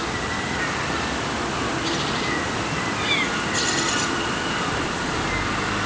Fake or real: real